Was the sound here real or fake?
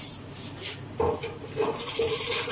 real